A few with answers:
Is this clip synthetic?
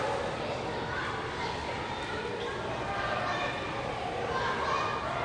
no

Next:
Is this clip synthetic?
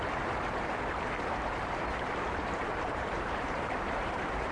yes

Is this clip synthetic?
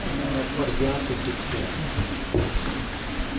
no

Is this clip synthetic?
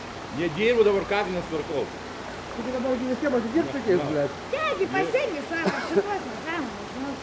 no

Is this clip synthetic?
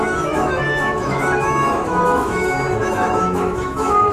yes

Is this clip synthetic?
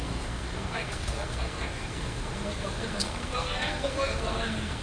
yes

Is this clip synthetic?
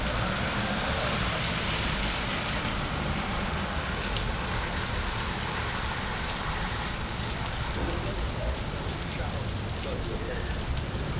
yes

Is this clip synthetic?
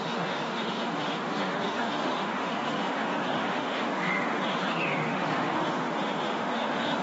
yes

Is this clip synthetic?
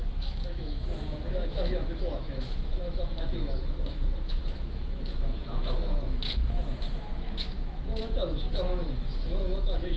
yes